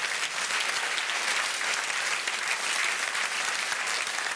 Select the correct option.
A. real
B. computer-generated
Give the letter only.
A